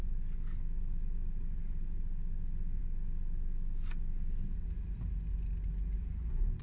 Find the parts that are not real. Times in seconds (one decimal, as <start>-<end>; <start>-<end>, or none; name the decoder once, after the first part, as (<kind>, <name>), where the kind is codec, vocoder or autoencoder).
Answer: none